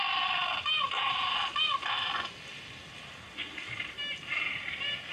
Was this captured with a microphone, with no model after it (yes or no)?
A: yes